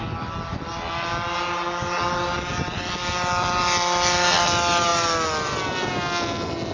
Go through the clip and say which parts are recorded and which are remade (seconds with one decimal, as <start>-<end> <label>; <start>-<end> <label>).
0.0-6.7 recorded